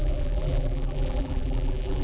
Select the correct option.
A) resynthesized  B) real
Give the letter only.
A